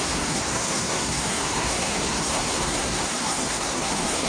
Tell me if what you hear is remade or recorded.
remade